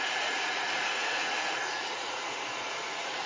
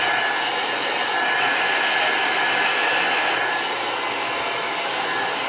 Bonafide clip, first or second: second